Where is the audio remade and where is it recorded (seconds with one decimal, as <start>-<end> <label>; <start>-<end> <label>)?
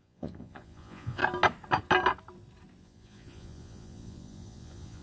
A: 0.0-1.2 remade; 1.2-2.8 recorded; 2.8-5.0 remade